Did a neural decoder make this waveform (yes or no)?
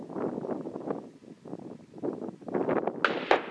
no